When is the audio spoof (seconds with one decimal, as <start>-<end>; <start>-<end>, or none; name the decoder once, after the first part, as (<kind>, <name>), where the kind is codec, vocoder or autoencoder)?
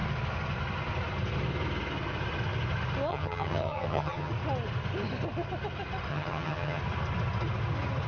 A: 3.1-4.3 (vocoder, HiFi-GAN); 6.1-6.8